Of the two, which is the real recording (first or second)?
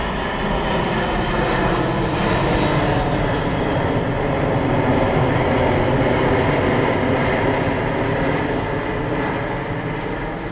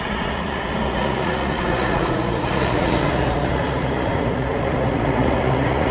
first